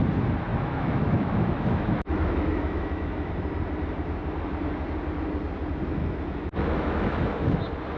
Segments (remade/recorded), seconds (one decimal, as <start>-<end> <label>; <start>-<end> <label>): 0.0-0.5 recorded; 0.5-3.3 remade; 3.3-6.0 recorded; 6.0-7.6 remade; 7.6-8.0 recorded